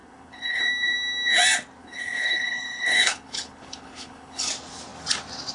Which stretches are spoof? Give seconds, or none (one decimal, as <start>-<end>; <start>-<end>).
0.0-0.6; 1.8-4.5